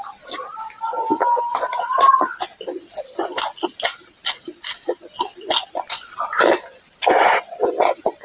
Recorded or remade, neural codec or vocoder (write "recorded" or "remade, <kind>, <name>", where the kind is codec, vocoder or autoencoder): recorded